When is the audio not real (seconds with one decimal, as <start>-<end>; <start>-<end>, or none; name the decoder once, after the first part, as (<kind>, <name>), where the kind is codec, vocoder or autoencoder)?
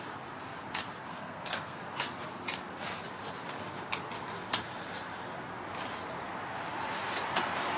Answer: 1.1-1.8 (codec, SNAC)